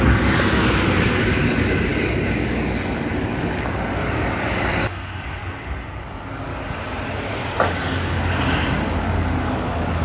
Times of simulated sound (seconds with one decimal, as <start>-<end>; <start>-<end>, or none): 0.0-5.4; 6.0-6.5; 7.7-10.0